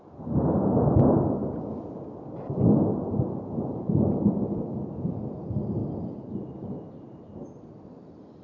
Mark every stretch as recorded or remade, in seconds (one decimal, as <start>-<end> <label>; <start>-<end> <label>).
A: 0.0-8.4 recorded